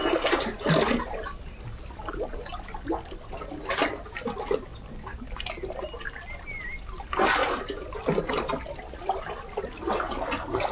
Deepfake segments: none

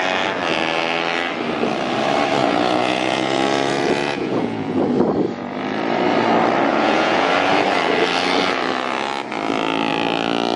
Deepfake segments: 2.4-4.8 (vocoder, Vocos); 6.7-7.3

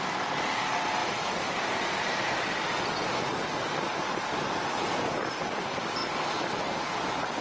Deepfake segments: none

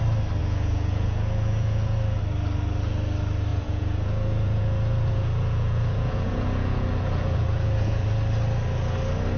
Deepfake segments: 0.4-2.2 (vocoder, Vocos); 3.5-8.1

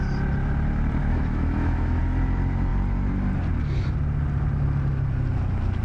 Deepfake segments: 1.0-2.0 (autoencoder, DAC-VAE)

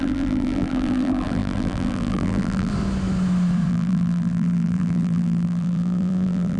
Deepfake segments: 0.0-2.7 (vocoder, BigVGAN v2); 3.7-6.6